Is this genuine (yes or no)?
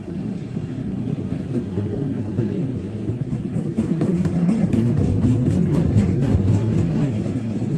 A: no